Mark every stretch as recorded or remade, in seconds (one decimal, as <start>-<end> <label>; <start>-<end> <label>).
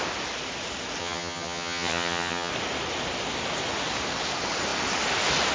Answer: 0.0-1.0 recorded; 1.0-2.5 remade; 2.5-5.5 recorded